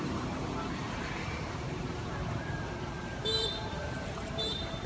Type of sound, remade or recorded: remade